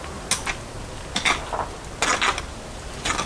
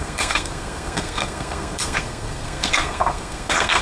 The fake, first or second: second